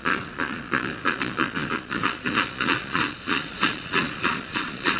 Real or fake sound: fake